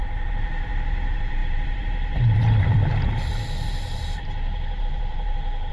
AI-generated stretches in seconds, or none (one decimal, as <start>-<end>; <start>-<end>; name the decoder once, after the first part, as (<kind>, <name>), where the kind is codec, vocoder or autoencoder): 0.0-5.7 (vocoder, BigVGAN v2)

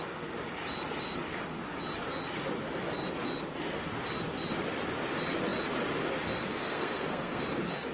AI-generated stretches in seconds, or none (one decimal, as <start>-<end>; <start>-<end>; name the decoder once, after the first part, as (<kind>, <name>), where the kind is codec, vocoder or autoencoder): 6.5-7.4 (codec, SNAC)

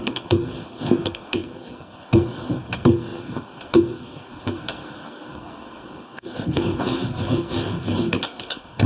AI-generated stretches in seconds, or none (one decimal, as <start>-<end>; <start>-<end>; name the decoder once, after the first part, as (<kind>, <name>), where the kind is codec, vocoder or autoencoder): 0.0-8.9 (codec, SNAC)

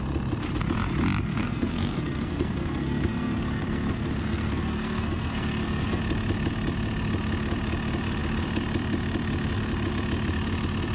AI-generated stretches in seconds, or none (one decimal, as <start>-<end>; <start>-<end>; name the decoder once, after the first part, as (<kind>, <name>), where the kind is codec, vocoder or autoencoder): 1.4-6.0 (codec, SNAC)

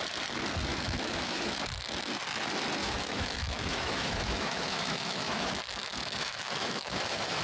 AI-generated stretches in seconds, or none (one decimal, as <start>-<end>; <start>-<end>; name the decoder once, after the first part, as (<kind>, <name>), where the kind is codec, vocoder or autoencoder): 0.7-1.6 (autoencoder, DAC-VAE); 2.8-7.4

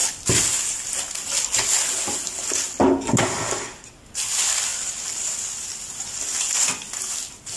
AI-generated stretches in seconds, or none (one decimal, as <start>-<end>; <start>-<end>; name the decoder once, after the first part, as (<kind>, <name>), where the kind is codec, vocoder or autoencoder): none

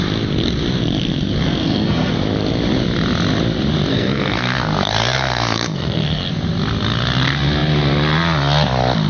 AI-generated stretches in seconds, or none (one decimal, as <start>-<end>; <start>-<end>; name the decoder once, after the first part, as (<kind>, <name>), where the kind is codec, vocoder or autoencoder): 1.6-2.1 (codec, SNAC); 3.9-6.3

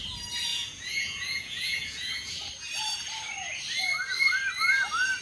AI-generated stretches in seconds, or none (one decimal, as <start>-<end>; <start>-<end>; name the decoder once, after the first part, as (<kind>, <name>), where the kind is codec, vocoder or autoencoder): 0.5-2.3 (vocoder, Vocos)